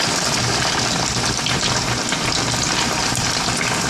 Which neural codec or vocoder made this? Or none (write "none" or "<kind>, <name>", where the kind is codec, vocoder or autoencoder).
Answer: vocoder, BigVGAN v2